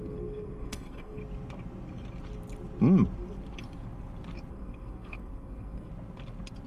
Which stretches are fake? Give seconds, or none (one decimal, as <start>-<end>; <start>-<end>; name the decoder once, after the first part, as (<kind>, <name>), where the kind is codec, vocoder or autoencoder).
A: 0.0-1.2 (codec, SNAC); 4.5-5.9